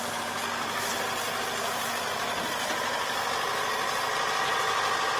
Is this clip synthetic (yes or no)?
no